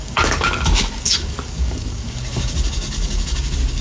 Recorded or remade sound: remade